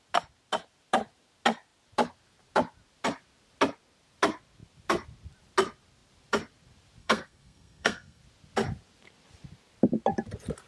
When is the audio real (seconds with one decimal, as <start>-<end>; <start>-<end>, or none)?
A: 0.0-7.0; 8.2-10.7